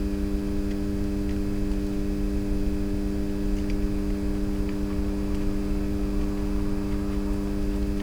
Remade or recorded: recorded